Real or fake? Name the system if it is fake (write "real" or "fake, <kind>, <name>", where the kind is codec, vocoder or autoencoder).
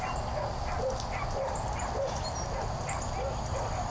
real